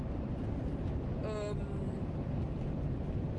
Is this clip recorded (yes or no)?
yes